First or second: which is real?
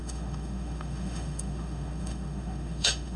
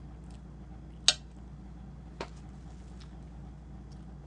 second